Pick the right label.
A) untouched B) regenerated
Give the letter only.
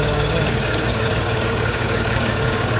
B